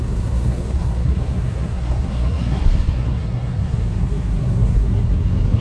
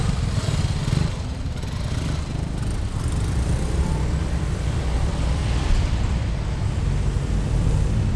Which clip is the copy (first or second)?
first